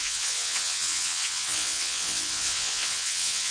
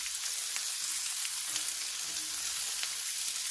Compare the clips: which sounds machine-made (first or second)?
first